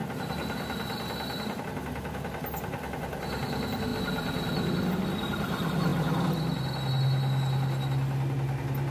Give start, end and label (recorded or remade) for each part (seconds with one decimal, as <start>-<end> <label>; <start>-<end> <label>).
0.0-8.9 recorded